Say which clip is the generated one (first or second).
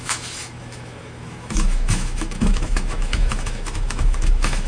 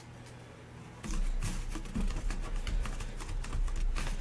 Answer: first